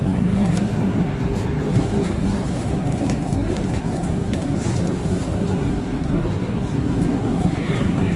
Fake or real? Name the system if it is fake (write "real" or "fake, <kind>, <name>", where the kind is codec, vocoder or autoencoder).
fake, codec, SNAC